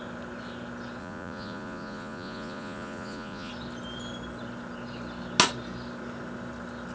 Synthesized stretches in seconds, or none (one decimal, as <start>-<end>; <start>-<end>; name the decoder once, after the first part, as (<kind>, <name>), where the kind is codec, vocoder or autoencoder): 1.0-3.5 (vocoder, Vocos)